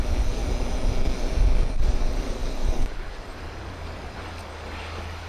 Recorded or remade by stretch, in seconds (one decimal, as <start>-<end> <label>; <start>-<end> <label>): 0.0-0.4 remade; 0.4-1.7 recorded; 1.7-5.3 remade